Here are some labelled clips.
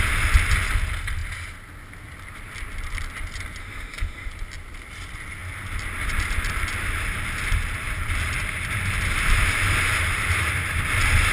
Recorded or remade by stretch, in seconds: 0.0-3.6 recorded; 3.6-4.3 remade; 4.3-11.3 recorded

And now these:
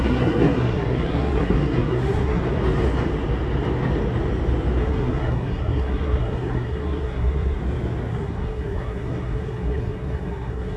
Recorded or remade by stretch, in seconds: 0.0-2.4 remade; 2.4-4.8 recorded; 4.8-7.6 remade; 7.6-8.1 recorded; 8.1-10.8 remade

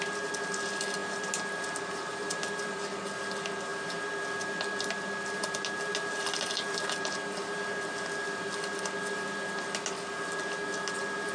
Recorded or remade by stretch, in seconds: 0.0-11.3 recorded

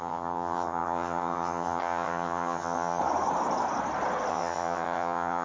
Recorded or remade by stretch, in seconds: 0.0-3.0 remade; 3.0-4.3 recorded; 4.3-5.4 remade